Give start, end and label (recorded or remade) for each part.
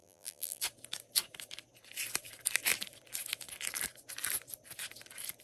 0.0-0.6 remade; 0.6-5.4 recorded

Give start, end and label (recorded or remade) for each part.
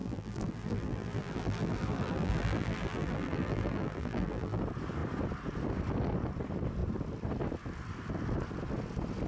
0.0-4.6 remade; 4.6-9.3 recorded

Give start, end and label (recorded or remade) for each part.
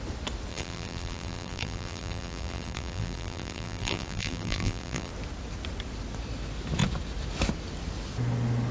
0.0-0.5 recorded; 0.5-5.1 remade; 5.1-8.7 recorded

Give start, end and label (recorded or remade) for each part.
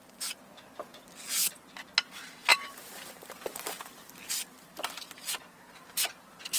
0.0-2.5 recorded; 2.5-6.6 remade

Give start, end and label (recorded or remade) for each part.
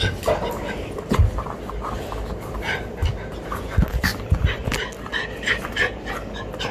0.0-4.1 recorded; 4.1-6.1 remade; 6.1-6.7 recorded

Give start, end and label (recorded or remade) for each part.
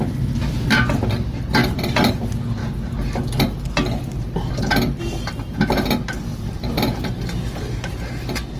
0.0-1.6 recorded; 1.6-2.1 remade; 2.1-6.3 recorded; 6.3-7.1 remade; 7.1-8.6 recorded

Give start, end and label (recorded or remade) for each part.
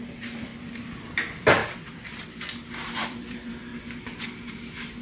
0.0-3.7 remade; 3.7-4.5 recorded; 4.5-5.0 remade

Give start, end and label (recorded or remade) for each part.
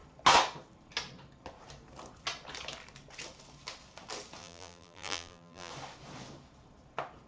0.0-4.4 recorded; 4.4-5.7 remade; 5.7-7.3 recorded